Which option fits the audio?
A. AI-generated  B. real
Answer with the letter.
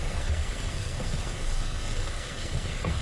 A